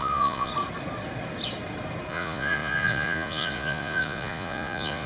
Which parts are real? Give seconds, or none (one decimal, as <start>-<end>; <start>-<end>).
0.5-2.1